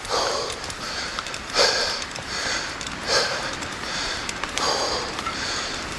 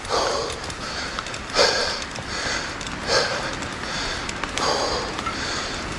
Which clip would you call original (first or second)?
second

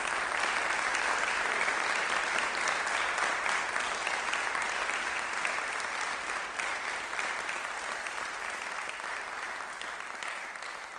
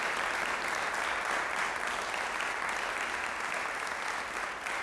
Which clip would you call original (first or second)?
second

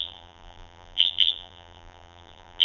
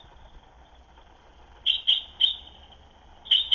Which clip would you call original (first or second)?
second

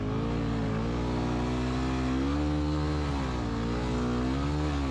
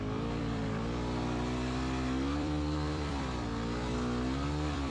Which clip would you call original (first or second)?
first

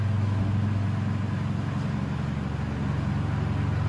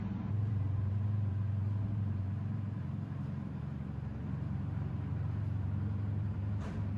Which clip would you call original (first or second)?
first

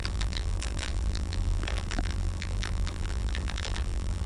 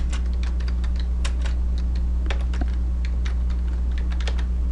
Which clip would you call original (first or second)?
second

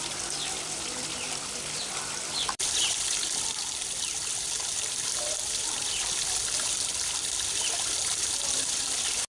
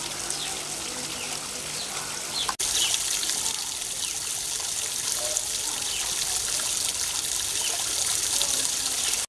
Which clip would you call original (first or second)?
second